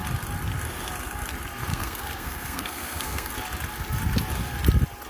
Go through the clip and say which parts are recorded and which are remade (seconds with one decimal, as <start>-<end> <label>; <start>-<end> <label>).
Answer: 0.0-1.7 recorded; 1.7-3.3 remade; 3.3-5.1 recorded